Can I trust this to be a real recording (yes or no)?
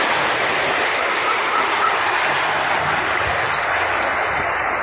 yes